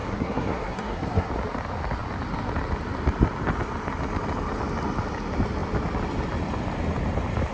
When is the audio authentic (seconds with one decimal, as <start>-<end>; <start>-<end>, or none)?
1.3-7.5